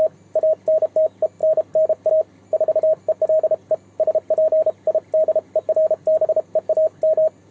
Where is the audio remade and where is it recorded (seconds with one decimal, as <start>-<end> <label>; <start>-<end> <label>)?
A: 0.0-7.5 recorded